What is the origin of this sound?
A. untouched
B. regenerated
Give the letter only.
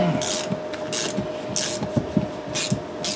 A